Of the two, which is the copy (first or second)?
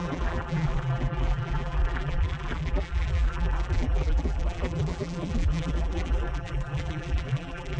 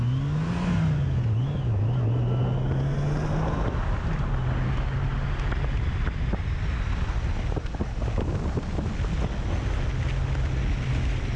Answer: first